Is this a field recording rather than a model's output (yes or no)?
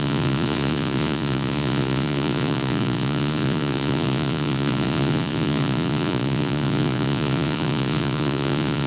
no